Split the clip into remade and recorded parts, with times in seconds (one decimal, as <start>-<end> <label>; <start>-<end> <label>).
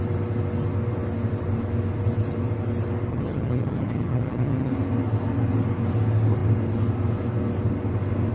0.0-3.1 recorded; 3.1-4.7 remade; 4.7-8.3 recorded